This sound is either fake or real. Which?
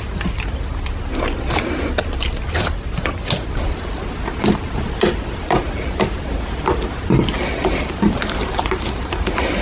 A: real